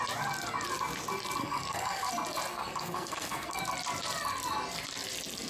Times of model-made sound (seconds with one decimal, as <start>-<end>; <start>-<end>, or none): 1.4-2.1; 2.5-3.6